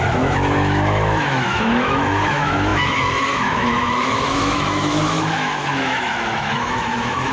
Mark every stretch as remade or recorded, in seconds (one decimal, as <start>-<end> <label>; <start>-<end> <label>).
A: 0.0-7.3 remade